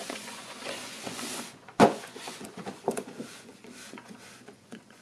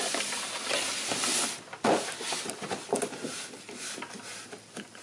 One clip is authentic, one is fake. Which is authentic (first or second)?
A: second